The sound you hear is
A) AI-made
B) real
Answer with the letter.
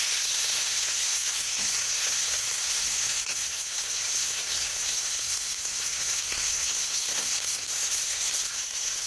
A